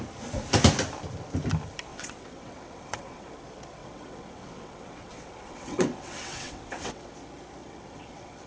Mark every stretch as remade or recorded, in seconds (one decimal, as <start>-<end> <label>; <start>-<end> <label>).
0.0-1.9 recorded; 1.9-3.3 remade; 3.3-3.8 recorded; 3.8-7.1 remade; 7.1-7.6 recorded; 7.6-8.5 remade